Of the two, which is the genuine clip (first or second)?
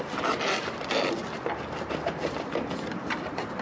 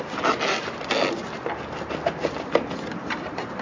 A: second